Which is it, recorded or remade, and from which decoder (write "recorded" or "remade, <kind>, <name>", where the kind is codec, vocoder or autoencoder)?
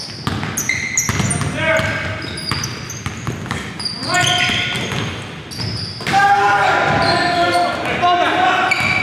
recorded